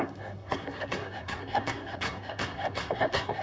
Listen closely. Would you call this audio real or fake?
fake